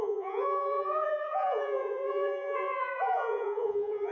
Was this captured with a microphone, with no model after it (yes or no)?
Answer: no